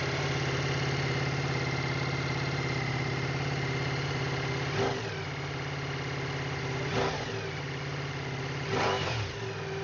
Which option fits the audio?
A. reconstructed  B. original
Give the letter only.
B